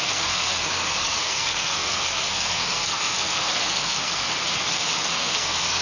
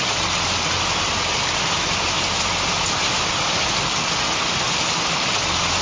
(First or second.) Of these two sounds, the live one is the second